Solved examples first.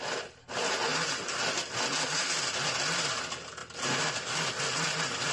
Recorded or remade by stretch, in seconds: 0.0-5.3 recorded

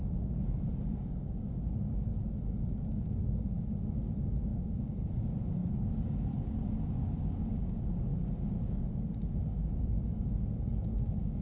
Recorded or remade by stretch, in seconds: 0.0-2.1 remade; 2.1-2.7 recorded; 2.7-8.1 remade; 8.1-9.4 recorded; 9.4-11.4 remade

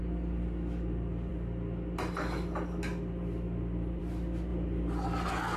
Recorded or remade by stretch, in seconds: 0.0-5.6 recorded

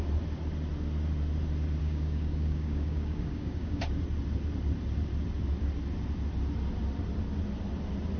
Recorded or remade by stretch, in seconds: 0.0-1.8 recorded; 1.8-3.8 remade; 3.8-8.2 recorded

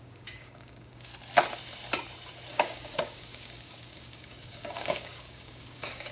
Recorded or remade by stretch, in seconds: 0.0-1.1 remade; 1.1-2.5 recorded; 2.5-6.1 remade

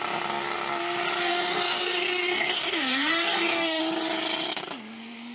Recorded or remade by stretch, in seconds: 0.0-1.2 recorded; 1.2-3.8 remade; 3.8-5.3 recorded